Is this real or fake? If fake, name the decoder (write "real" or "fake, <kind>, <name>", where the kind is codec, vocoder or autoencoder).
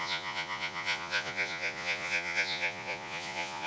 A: fake, vocoder, Vocos